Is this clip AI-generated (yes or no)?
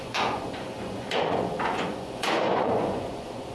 yes